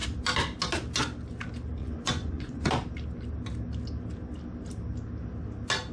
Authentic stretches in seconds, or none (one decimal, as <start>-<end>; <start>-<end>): 0.0-1.8; 2.7-5.9